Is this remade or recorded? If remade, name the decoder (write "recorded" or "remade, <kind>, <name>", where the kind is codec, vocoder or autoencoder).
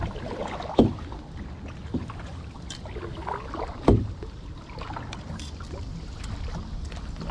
recorded